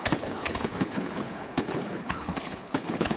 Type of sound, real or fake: fake